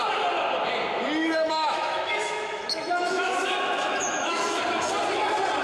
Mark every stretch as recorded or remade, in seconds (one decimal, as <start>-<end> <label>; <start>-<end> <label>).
0.0-1.2 recorded; 1.2-4.6 remade; 4.6-5.6 recorded